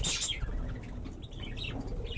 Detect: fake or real real